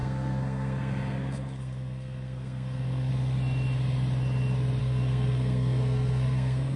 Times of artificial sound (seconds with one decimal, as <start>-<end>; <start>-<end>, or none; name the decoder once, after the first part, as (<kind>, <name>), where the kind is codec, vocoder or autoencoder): 0.0-3.1 (codec, SNAC); 4.8-6.8